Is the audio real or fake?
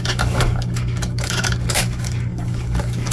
fake